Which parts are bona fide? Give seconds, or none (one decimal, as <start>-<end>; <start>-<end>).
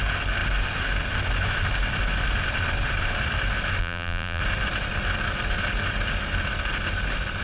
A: 0.0-3.8; 4.4-7.4